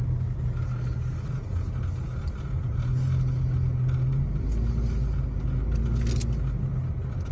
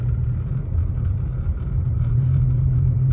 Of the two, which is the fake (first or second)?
second